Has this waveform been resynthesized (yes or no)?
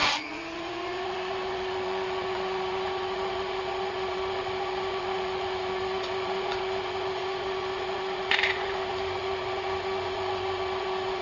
yes